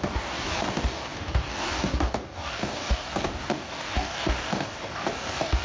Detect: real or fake fake